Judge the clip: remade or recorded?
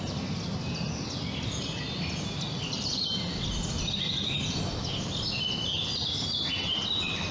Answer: recorded